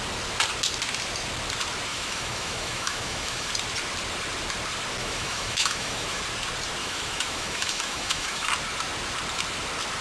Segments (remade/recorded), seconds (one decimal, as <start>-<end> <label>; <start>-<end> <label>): 0.0-1.9 recorded; 1.9-3.5 remade; 3.5-5.0 recorded; 5.0-6.2 remade; 6.2-6.8 recorded; 6.8-8.5 remade; 8.5-10.0 recorded